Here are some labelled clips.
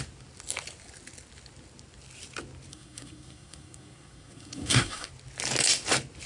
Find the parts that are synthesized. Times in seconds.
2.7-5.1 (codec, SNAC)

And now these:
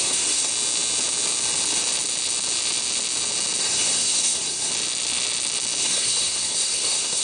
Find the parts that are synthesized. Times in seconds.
0.0-0.5 (codec, SNAC); 3.6-4.7; 5.8-7.2

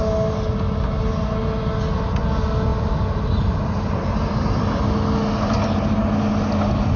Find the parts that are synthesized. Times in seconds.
2.7-4.8 (vocoder, BigVGAN v2)

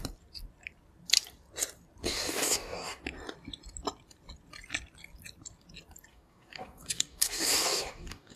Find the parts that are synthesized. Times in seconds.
2.0-3.0 (codec, DAC); 6.1-8.4

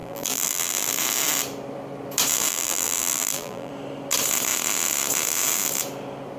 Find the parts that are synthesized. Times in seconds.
0.0-0.9 (vocoder, BigVGAN v2); 2.5-3.7